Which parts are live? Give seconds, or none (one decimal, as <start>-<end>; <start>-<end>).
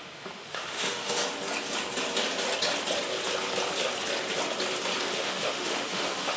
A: 1.2-5.0